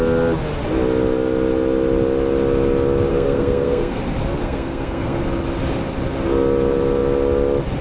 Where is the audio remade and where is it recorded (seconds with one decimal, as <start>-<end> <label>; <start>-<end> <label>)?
0.0-3.1 recorded; 3.1-4.0 remade; 4.0-4.4 recorded; 4.4-5.2 remade; 5.2-7.8 recorded